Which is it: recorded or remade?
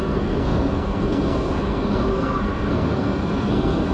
remade